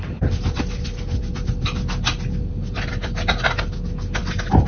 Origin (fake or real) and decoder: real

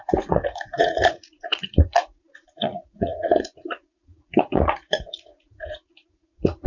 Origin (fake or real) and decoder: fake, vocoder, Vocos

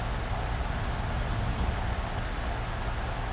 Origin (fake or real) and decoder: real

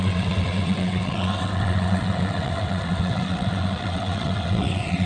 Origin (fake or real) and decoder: fake, vocoder, WaveNeXt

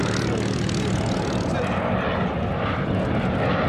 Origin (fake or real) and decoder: real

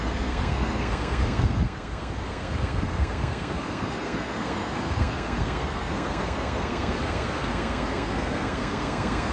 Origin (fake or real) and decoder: fake, codec, SNAC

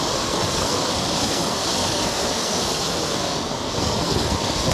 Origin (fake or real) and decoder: fake, codec, SNAC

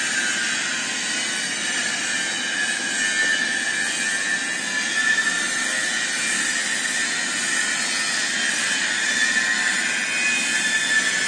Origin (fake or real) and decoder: real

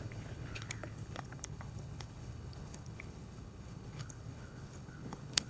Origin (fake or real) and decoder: fake, codec, HILCodec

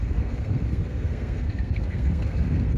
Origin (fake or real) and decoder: fake, codec, SNAC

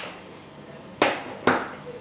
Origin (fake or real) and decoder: real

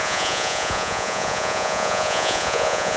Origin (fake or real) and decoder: fake, vocoder, Vocos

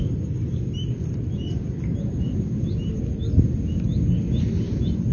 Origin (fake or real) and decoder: real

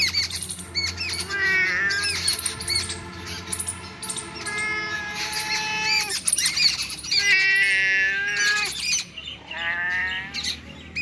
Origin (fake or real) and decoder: real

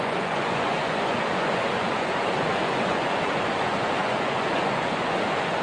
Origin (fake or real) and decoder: fake, vocoder, Vocos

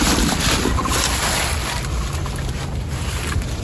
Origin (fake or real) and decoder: real